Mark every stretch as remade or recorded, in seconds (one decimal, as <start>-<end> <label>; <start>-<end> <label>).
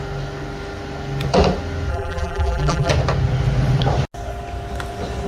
0.0-1.9 recorded; 1.9-2.9 remade; 2.9-5.3 recorded